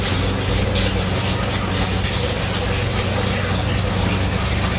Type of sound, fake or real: real